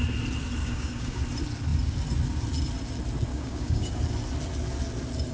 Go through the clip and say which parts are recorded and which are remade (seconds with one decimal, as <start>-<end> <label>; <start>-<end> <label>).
0.0-0.6 recorded; 0.6-1.2 remade; 1.2-3.3 recorded; 3.3-4.0 remade; 4.0-5.3 recorded